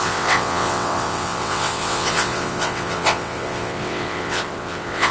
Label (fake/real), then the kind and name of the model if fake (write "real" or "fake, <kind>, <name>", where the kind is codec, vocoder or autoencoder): fake, vocoder, WaveNeXt